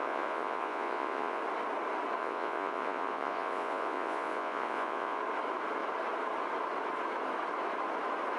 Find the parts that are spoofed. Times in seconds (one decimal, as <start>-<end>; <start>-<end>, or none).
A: 0.0-1.4; 2.2-5.2